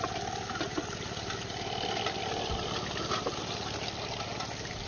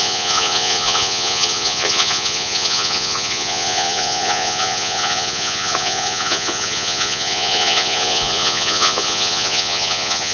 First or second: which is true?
first